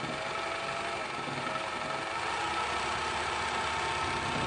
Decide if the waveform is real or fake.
real